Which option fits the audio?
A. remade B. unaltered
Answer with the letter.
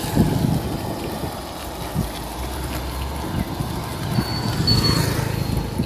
B